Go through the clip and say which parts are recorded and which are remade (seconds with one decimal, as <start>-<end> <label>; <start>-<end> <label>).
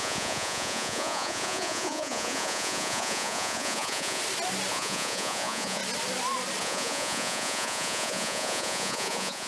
0.0-4.2 remade; 4.2-4.7 recorded; 4.7-5.8 remade; 5.8-6.6 recorded; 6.6-9.5 remade